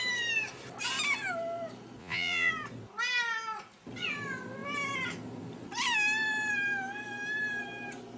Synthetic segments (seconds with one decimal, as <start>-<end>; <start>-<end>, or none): 2.0-2.5